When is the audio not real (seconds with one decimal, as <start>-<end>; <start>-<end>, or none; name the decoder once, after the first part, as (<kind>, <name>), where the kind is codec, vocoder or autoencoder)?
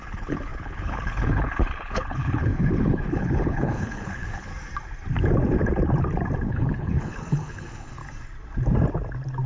0.0-4.5 (codec, HILCodec); 6.5-8.0